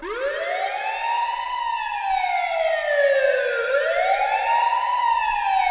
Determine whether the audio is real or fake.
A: real